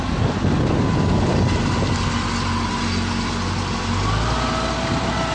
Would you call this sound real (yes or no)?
yes